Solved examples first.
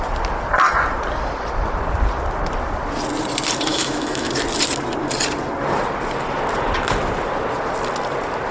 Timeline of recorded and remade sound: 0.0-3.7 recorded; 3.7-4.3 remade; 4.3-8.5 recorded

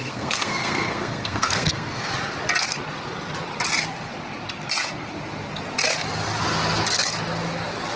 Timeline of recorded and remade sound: 0.0-2.1 remade; 2.1-8.0 recorded

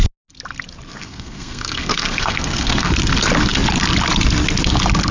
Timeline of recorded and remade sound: 0.0-0.9 recorded; 0.9-2.9 remade; 2.9-5.1 recorded